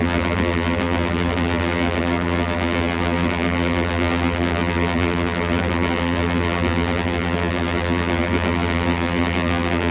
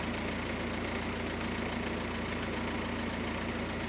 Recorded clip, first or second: second